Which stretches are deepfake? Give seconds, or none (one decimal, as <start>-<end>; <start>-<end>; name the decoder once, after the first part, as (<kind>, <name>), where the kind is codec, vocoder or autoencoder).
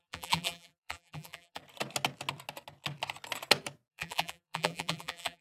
0.0-1.6 (vocoder, BigVGAN v2); 3.9-5.4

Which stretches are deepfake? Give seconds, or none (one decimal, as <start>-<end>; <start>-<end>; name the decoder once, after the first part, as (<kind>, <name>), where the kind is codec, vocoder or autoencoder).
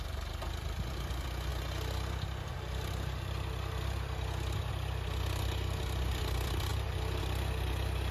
none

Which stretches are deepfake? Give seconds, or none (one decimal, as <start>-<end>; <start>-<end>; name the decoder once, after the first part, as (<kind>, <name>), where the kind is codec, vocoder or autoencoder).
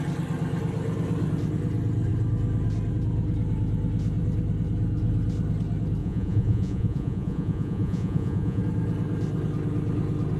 6.0-8.6 (vocoder, Vocos)